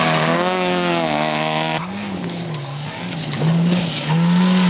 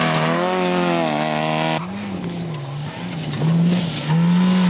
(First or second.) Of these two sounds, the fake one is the first